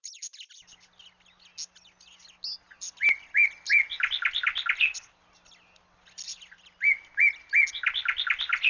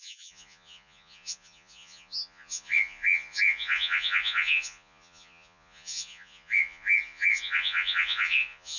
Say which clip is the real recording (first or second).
first